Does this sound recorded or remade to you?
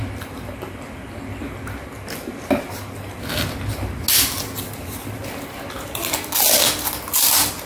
recorded